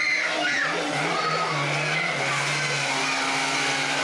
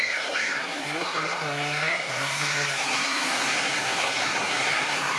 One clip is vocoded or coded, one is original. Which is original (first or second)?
first